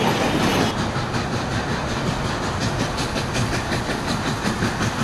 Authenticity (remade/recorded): recorded